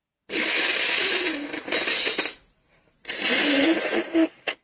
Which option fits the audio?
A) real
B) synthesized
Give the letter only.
B